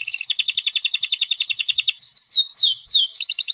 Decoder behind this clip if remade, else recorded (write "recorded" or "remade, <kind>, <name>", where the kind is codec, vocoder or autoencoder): remade, codec, DAC